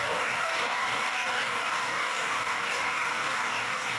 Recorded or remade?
remade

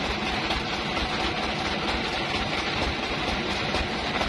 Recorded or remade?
recorded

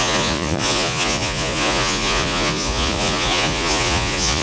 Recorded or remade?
remade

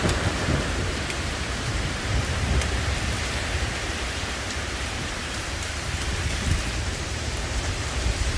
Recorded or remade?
remade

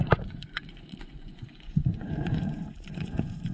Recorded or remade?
remade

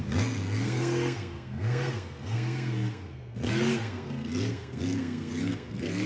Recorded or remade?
remade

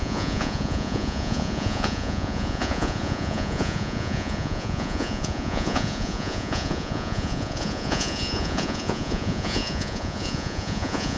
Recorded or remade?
remade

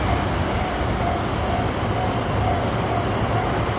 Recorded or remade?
recorded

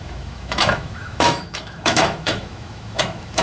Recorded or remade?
remade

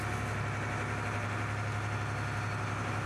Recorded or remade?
recorded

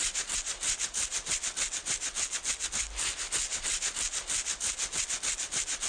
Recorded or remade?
recorded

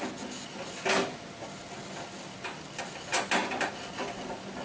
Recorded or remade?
recorded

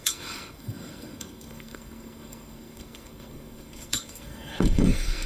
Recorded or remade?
remade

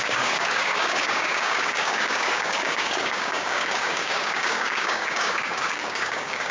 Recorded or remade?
remade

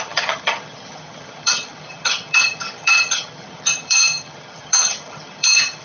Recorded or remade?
remade